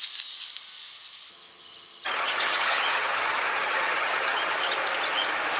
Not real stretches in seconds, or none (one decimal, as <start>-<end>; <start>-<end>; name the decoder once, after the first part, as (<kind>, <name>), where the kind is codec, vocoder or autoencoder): 1.3-4.7 (vocoder, HiFi-GAN)

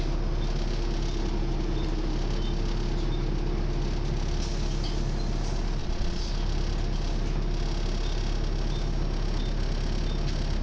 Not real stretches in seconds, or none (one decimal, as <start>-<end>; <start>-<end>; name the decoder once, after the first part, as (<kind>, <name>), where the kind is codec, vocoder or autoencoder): 5.8-6.3 (vocoder, Vocos)

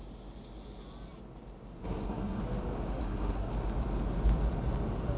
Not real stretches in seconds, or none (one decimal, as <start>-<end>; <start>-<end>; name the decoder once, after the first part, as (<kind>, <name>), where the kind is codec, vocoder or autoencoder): 1.8-2.4 (codec, SNAC); 3.0-3.5

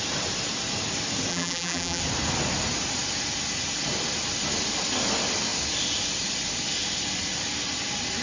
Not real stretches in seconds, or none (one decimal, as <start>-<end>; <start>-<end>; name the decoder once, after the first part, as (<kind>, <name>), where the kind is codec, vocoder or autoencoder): 1.3-2.0 (vocoder, BigVGAN v2)